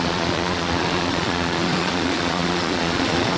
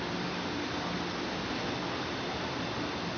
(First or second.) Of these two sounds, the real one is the second